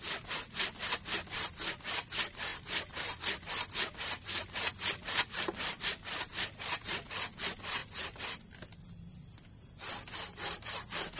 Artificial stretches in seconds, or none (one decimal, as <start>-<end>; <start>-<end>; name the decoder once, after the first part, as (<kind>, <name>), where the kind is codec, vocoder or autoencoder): 2.5-5.8 (vocoder, BigVGAN v2); 7.8-8.9

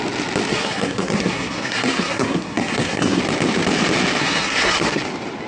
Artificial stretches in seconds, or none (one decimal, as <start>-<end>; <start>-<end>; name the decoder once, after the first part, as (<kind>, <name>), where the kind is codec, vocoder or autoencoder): 0.5-3.2 (codec, SNAC); 4.2-5.0